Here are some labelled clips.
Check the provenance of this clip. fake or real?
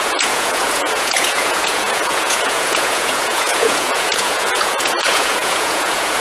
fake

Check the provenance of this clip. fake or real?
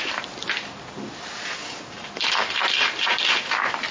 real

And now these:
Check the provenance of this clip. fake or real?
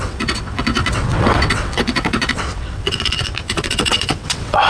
fake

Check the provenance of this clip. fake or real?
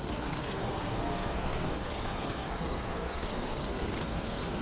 fake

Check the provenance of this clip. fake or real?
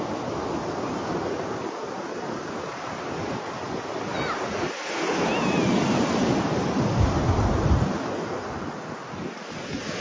real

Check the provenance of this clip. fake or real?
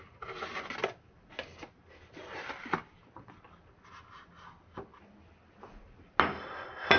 real